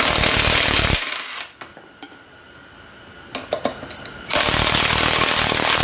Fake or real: real